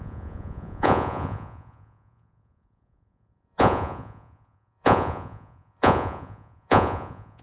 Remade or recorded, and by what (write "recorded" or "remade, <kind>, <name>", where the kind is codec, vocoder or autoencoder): remade, vocoder, Vocos